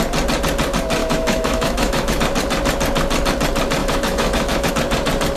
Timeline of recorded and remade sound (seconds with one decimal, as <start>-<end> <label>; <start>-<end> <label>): 0.0-1.0 recorded; 1.0-2.2 remade; 2.2-3.8 recorded; 3.8-4.7 remade; 4.7-5.4 recorded